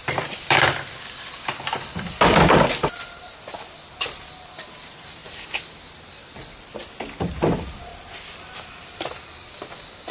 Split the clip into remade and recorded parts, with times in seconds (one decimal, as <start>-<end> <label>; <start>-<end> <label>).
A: 0.0-5.2 remade; 5.2-6.5 recorded; 6.5-7.9 remade; 7.9-8.5 recorded; 8.5-10.1 remade